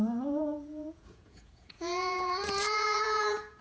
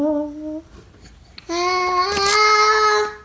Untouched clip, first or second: second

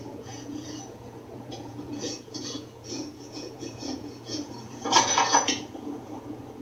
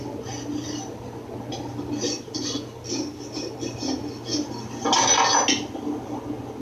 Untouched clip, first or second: second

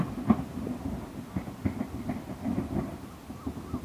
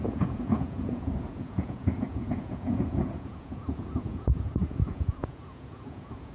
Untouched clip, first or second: first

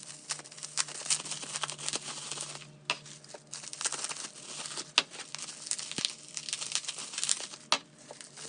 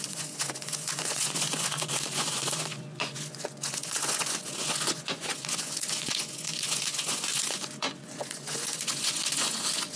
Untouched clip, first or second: first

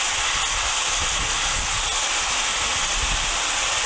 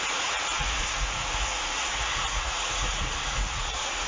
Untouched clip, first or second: first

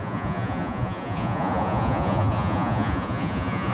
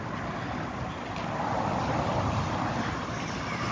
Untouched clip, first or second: second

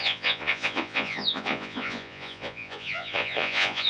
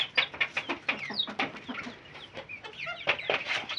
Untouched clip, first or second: second